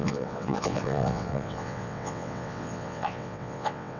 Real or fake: fake